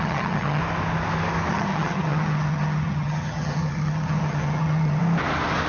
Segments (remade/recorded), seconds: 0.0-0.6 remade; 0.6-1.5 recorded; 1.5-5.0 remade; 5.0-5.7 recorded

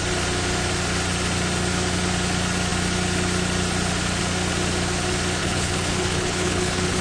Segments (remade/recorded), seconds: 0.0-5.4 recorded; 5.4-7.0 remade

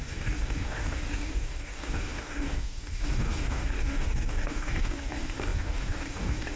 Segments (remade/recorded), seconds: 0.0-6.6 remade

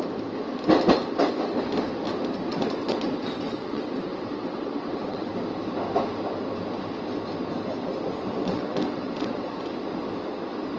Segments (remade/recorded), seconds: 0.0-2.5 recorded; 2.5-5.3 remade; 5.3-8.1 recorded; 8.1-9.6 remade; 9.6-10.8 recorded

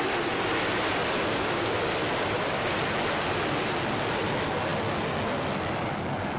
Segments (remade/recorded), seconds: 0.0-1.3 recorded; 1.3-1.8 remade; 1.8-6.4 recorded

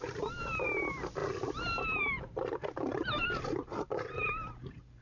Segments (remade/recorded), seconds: 0.0-1.2 remade; 1.2-1.8 recorded; 1.8-5.0 remade

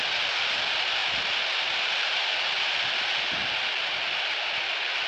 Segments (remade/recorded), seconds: 0.0-1.0 recorded; 1.0-2.9 remade; 2.9-5.1 recorded

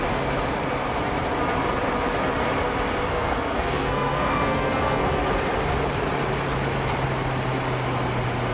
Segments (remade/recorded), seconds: 0.0-3.1 recorded; 3.1-5.2 remade; 5.2-8.5 recorded